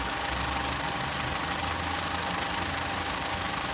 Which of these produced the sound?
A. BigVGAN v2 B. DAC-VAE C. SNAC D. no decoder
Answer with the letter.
D